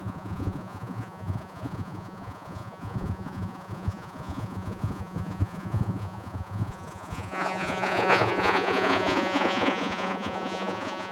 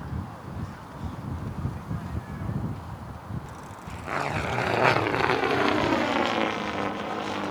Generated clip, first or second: first